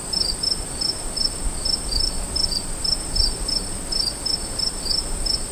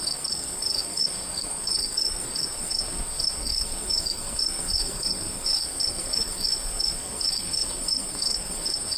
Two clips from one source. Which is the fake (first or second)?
second